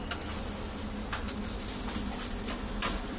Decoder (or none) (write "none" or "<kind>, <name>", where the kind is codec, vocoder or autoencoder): none